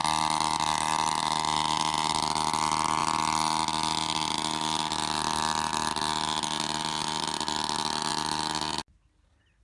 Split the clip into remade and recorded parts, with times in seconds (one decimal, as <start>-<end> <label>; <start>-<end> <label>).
0.0-9.6 recorded